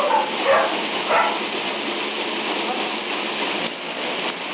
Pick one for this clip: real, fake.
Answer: real